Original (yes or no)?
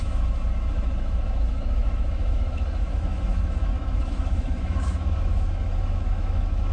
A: no